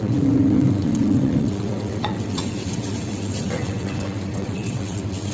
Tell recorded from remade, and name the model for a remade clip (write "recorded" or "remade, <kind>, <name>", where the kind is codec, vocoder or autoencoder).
remade, vocoder, WaveNeXt